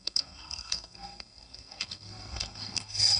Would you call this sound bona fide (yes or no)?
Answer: no